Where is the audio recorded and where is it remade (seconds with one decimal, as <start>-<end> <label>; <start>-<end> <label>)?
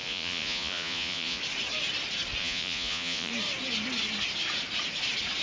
0.0-1.4 remade; 1.4-2.4 recorded; 2.4-3.3 remade; 3.3-5.4 recorded